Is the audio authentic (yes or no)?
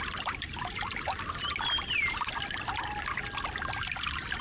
yes